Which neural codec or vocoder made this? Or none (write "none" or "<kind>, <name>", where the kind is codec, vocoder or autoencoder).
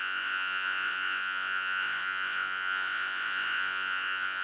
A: vocoder, Vocos